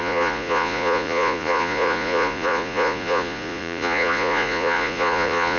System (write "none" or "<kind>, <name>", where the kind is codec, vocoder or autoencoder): vocoder, Vocos